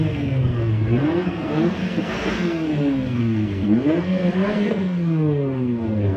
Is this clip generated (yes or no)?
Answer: yes